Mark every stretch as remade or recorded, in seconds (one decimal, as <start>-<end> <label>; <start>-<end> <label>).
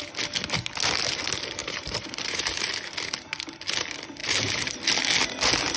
0.0-1.6 recorded; 1.6-2.6 remade; 2.6-4.2 recorded; 4.2-4.7 remade; 4.7-5.8 recorded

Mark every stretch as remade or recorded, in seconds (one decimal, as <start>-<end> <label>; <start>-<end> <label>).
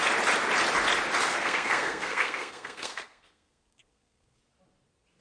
0.0-1.3 recorded; 1.3-4.4 remade; 4.4-5.2 recorded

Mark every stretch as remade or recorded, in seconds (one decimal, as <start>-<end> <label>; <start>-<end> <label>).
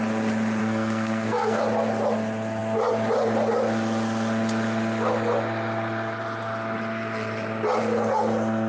0.0-0.6 recorded; 0.6-1.6 remade; 1.6-8.7 recorded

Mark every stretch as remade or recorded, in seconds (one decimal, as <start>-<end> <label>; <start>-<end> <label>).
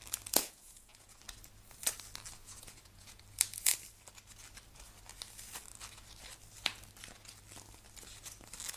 0.0-0.4 recorded; 0.4-1.2 remade; 1.2-2.4 recorded; 2.4-3.2 remade; 3.2-8.8 recorded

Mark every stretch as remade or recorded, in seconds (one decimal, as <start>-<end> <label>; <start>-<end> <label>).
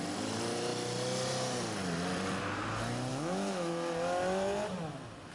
0.0-3.1 recorded; 3.1-3.7 remade; 3.7-5.3 recorded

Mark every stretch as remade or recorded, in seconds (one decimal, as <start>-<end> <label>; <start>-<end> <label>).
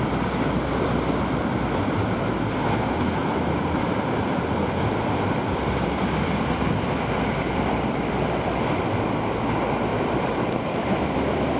0.0-3.2 recorded; 3.2-8.0 remade; 8.0-9.9 recorded; 9.9-11.2 remade; 11.2-11.6 recorded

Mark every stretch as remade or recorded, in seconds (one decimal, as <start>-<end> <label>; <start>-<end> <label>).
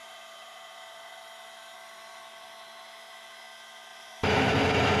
0.0-1.1 remade; 1.1-3.9 recorded; 3.9-5.0 remade